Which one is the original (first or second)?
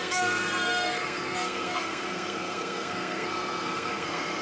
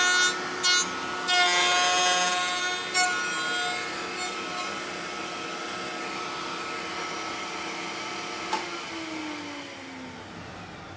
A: second